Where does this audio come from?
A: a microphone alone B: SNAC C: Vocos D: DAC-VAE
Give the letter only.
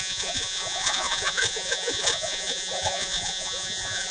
C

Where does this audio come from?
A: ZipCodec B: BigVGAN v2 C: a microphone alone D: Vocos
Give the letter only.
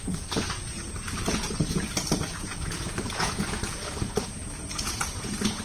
D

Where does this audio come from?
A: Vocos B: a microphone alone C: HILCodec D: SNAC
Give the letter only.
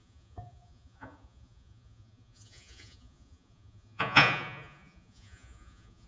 A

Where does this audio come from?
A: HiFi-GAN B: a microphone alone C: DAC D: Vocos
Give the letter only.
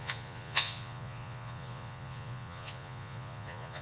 D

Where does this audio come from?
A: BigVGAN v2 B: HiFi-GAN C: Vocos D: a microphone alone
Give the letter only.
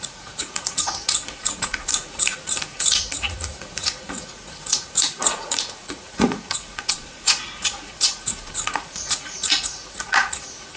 C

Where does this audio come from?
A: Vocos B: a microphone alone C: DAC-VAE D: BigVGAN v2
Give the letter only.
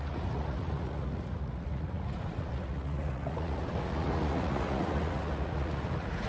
A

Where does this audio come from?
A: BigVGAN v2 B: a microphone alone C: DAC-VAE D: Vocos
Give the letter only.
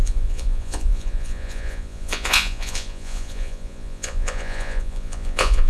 D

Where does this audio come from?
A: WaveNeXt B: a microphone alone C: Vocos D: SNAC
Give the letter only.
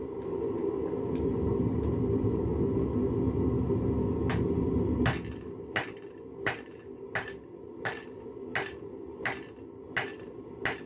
B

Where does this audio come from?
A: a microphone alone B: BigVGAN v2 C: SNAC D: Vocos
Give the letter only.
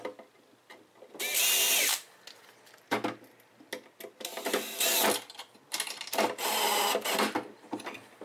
A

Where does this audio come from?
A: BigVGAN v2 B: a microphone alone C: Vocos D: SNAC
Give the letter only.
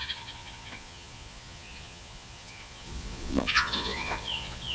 C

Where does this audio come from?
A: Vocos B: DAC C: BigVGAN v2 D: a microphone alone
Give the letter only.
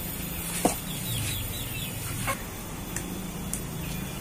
D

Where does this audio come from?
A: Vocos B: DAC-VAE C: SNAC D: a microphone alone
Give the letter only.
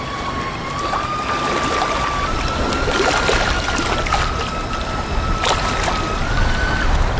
D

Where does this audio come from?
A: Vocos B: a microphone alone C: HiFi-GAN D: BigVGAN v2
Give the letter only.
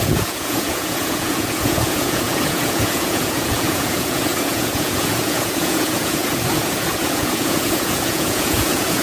A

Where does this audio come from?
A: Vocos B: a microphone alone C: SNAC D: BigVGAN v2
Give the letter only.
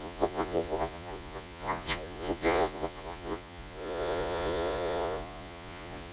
A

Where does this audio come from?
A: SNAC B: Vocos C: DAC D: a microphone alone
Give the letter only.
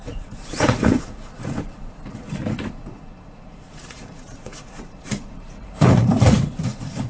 B